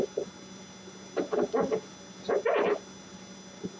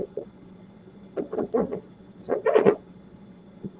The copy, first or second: second